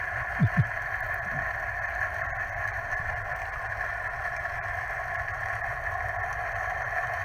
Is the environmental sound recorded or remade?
recorded